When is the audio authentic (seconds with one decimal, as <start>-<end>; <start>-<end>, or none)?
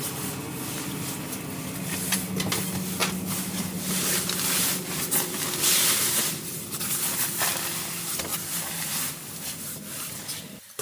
0.0-8.3; 9.1-10.8